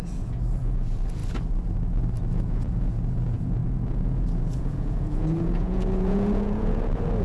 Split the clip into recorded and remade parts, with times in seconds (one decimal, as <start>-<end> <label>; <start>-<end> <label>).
0.0-1.2 remade; 1.2-2.3 recorded; 2.3-7.2 remade

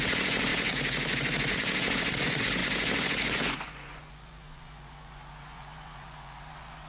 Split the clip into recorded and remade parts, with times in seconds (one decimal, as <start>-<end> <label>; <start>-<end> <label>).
0.0-6.9 remade

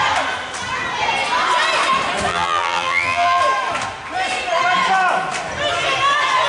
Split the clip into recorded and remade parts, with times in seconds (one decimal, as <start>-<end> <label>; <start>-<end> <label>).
0.0-2.3 recorded; 2.3-3.4 remade; 3.4-6.5 recorded